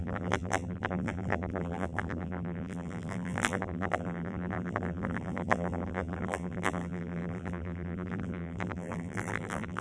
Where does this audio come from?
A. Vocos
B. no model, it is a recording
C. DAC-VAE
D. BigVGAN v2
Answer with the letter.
D